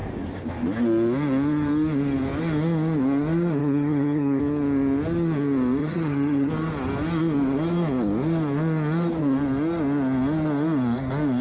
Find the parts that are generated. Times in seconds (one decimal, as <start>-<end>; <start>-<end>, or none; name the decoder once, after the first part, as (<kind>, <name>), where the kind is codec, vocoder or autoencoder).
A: 3.6-4.4 (vocoder, HiFi-GAN); 5.8-6.5